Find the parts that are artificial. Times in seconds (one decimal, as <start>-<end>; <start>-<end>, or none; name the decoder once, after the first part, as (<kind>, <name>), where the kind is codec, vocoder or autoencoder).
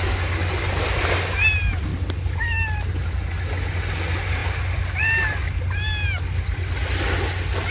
none